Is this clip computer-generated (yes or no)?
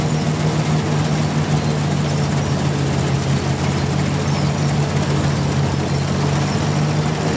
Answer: no